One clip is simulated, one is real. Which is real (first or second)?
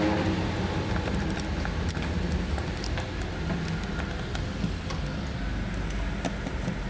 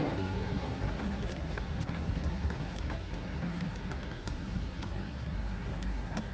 first